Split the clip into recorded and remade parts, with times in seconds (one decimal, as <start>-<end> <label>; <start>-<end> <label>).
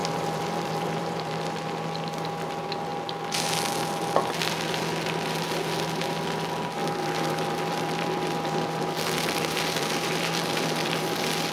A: 0.0-1.3 remade; 1.3-6.8 recorded; 6.8-11.0 remade; 11.0-11.5 recorded